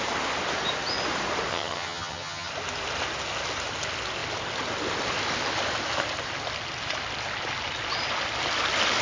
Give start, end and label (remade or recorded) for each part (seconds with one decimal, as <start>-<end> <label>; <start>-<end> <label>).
0.0-1.5 recorded; 1.5-2.5 remade; 2.5-9.0 recorded